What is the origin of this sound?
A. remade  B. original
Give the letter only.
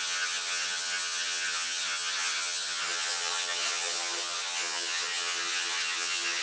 A